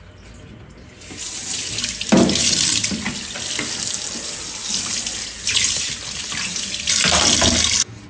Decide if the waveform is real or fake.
real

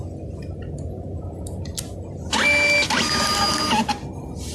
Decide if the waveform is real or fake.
real